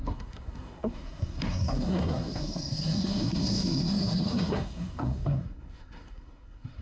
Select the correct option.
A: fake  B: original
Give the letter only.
A